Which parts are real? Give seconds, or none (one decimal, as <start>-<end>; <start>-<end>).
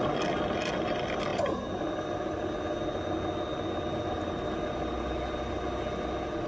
0.0-6.5